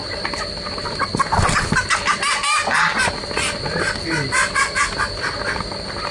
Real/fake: real